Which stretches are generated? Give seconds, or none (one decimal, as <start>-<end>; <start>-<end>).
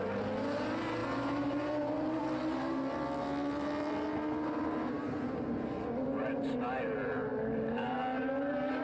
none